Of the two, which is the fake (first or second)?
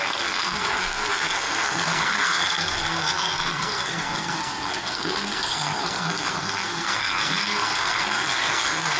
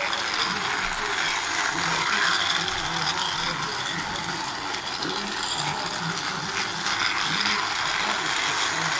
first